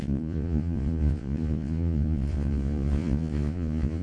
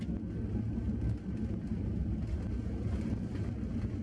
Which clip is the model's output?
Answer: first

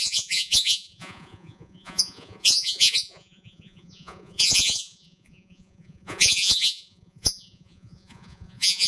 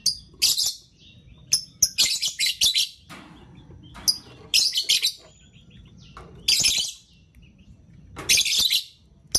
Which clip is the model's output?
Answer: first